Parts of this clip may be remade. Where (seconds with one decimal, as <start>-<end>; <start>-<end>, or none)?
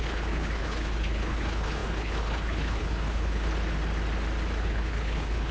0.0-3.5; 4.6-5.5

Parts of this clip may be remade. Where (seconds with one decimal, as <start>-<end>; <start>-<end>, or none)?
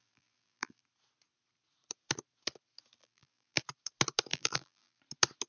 0.0-0.8; 3.0-3.6; 4.3-5.0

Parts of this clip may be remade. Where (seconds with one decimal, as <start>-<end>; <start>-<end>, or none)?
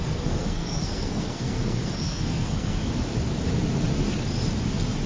0.0-2.8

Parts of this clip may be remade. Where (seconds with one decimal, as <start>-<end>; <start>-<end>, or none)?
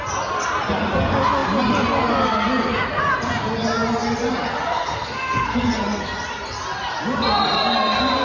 4.7-6.0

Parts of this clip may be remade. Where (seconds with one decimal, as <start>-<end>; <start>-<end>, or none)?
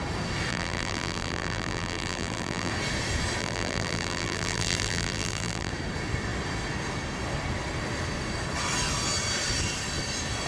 0.5-2.7; 3.4-5.7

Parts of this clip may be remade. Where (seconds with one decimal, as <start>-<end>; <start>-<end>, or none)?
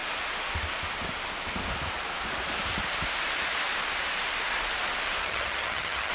5.2-6.1